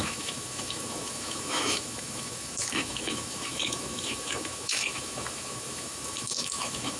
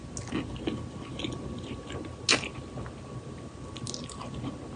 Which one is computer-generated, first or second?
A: first